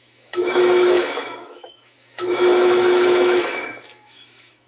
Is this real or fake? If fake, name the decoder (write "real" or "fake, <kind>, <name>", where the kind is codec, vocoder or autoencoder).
fake, autoencoder, DAC-VAE